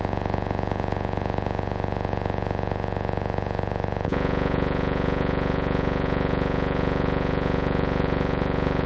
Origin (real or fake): fake